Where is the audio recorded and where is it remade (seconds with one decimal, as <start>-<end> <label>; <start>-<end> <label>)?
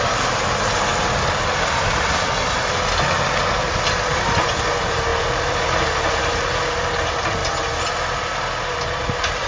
0.0-9.5 recorded